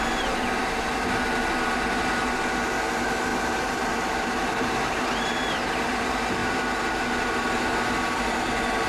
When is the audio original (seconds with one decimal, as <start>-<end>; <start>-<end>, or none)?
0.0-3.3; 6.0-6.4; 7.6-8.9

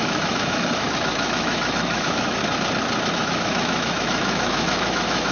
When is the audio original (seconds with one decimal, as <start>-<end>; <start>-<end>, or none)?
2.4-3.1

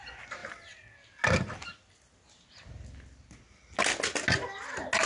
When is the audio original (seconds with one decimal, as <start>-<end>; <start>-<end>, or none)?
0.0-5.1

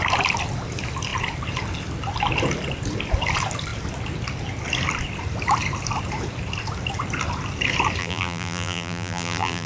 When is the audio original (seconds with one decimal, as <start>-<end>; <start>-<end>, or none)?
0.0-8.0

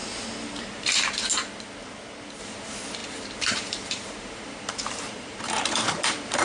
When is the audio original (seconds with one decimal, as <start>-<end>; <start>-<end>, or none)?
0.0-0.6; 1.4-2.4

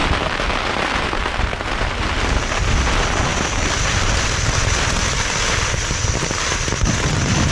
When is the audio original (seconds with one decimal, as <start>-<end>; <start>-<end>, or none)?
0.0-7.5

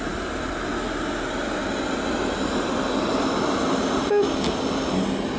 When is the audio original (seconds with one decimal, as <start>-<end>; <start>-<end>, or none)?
0.0-5.4

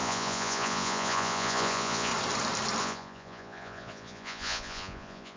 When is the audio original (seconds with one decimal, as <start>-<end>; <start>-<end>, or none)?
2.1-2.8